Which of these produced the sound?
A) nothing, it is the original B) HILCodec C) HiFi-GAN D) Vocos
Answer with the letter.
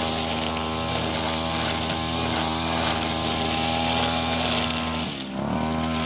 A